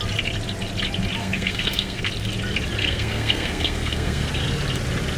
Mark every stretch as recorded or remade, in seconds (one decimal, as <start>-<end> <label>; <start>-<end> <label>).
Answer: 0.0-1.2 recorded; 1.2-2.1 remade; 2.1-2.8 recorded; 2.8-4.3 remade; 4.3-5.2 recorded